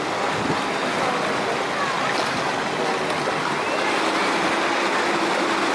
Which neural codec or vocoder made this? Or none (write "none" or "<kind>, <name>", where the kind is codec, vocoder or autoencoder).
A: none